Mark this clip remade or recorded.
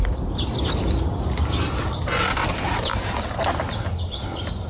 recorded